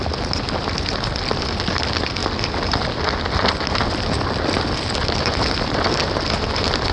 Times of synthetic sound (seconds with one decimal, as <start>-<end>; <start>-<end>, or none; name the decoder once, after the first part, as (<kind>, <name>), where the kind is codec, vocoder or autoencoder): none